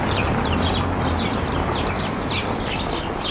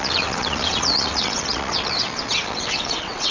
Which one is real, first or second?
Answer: first